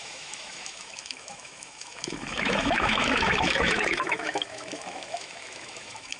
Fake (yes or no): yes